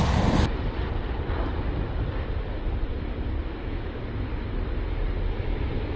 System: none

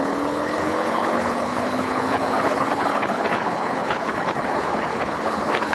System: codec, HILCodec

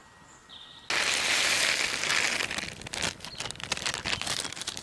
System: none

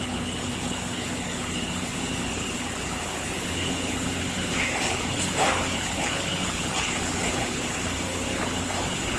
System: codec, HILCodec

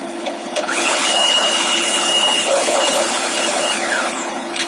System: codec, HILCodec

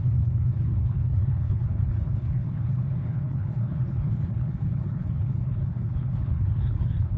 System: codec, HILCodec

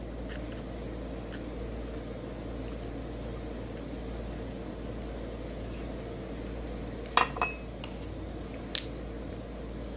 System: none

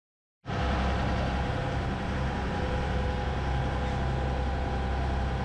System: none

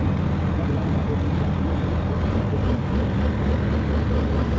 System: none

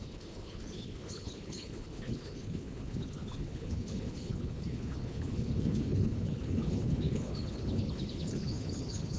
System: codec, HILCodec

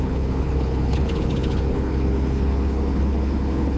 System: codec, HILCodec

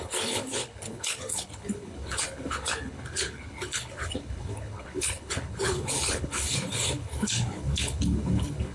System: codec, HILCodec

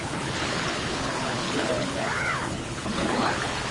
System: codec, HILCodec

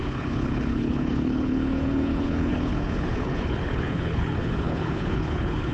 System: codec, HILCodec